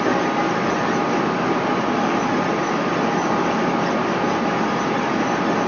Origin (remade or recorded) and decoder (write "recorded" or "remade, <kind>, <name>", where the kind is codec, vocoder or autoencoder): recorded